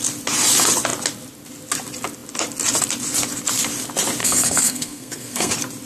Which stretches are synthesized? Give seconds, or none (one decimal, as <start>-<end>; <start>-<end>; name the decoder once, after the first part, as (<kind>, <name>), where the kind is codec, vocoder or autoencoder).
4.2-5.5 (codec, SNAC)